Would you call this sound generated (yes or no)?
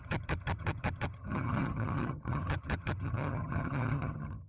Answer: yes